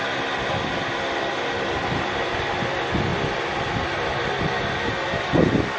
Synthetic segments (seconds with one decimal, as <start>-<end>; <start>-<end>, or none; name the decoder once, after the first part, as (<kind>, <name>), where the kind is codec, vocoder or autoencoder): none